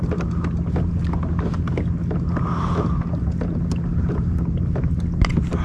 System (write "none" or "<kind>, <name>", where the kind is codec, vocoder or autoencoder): none